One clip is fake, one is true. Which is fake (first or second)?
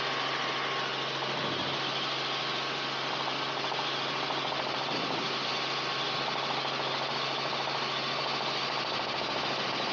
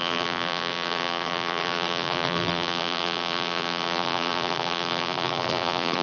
second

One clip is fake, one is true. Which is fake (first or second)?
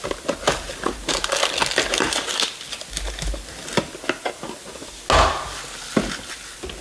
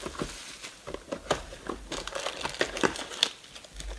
second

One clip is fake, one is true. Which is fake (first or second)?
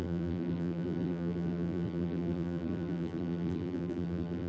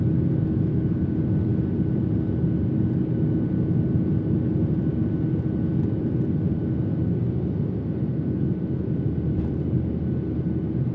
first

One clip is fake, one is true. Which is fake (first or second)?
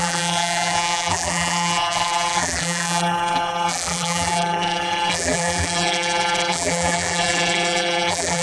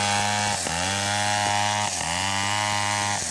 first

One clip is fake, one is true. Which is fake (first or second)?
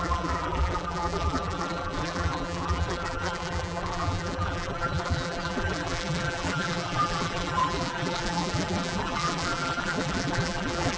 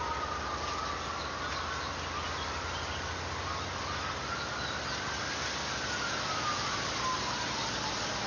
first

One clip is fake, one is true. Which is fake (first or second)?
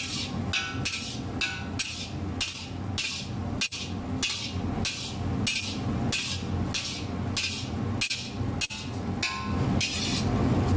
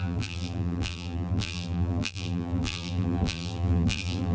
second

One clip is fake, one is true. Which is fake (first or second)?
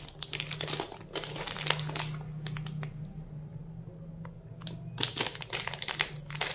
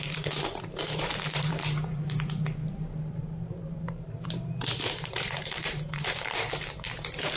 second